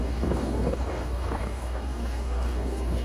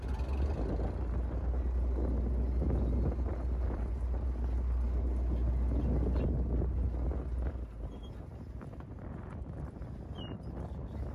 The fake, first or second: first